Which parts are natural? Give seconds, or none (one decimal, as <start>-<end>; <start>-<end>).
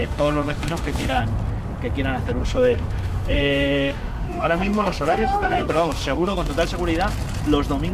1.2-2.4; 6.5-7.9